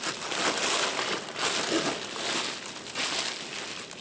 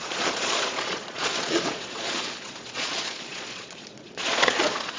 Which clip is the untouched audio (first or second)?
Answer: first